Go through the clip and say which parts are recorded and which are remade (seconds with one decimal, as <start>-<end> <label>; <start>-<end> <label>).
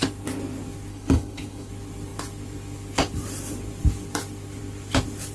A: 0.0-0.9 recorded; 0.9-1.7 remade; 1.7-5.3 recorded